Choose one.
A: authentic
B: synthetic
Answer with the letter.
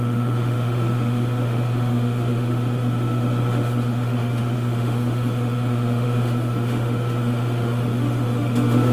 B